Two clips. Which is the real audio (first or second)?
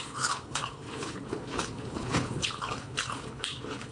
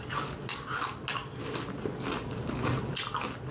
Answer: second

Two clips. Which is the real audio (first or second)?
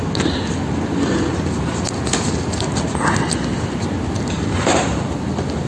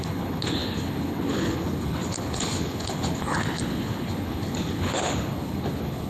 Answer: first